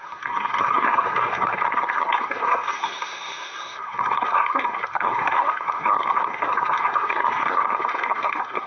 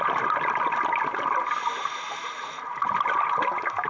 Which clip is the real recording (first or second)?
second